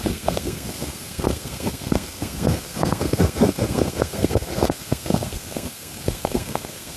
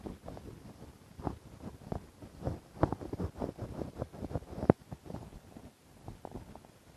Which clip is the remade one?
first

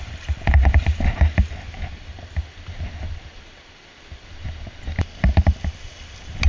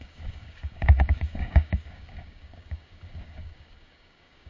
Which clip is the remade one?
second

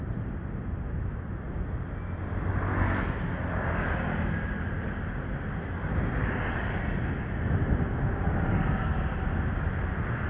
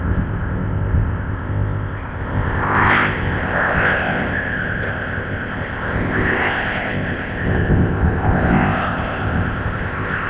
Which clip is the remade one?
second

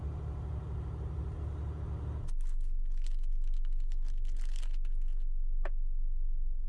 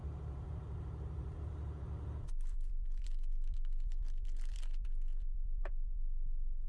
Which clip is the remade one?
second